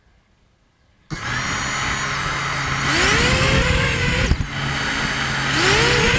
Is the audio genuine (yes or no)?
yes